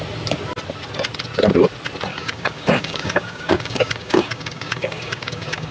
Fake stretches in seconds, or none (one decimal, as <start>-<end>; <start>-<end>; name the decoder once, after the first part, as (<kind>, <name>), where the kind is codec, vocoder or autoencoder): 2.1-5.7 (codec, DAC)